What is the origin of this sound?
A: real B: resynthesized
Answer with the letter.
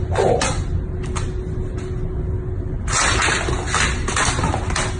A